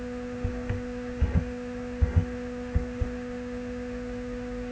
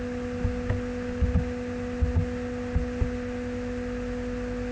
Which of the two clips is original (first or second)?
second